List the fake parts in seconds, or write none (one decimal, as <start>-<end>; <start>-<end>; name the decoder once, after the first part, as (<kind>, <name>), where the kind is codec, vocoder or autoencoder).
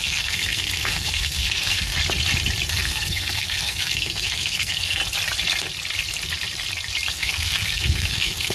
0.0-1.9 (codec, SNAC); 2.7-5.0; 7.1-8.5